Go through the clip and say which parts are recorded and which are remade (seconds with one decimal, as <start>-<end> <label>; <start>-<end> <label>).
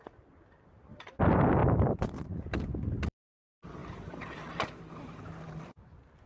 0.0-1.6 recorded; 1.6-3.2 remade; 3.2-3.8 recorded; 3.8-4.3 remade; 4.3-6.3 recorded